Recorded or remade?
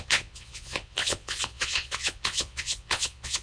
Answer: remade